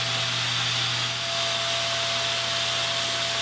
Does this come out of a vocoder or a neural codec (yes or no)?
no